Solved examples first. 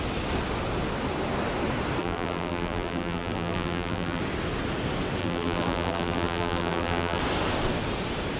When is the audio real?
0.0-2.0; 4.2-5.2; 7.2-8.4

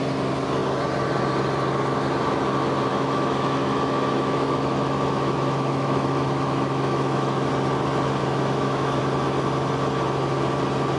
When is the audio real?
0.0-2.9; 7.5-8.2; 9.0-11.0

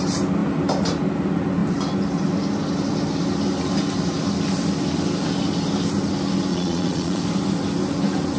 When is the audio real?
0.0-6.5; 7.2-8.4

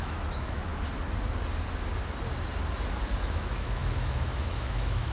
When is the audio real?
0.7-3.2

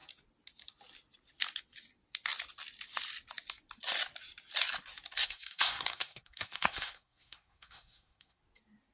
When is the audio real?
0.0-5.2; 8.4-8.9

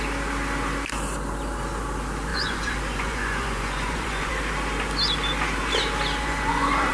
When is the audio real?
0.0-2.3; 4.3-6.2

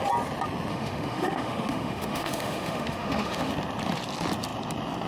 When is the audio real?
0.0-0.7; 3.5-5.1